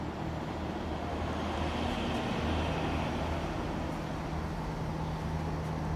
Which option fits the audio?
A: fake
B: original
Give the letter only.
B